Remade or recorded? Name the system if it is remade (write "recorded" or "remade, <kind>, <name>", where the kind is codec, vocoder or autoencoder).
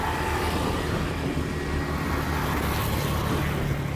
recorded